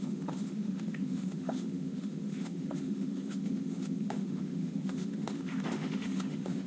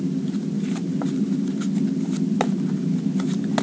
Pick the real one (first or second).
second